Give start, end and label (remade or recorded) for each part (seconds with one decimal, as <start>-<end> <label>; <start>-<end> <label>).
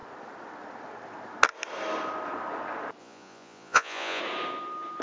0.0-3.0 recorded; 3.0-4.2 remade; 4.2-5.0 recorded